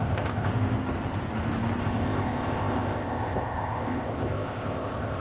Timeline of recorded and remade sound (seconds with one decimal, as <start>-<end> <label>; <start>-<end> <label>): 0.0-0.5 remade; 0.5-1.8 recorded; 1.8-5.2 remade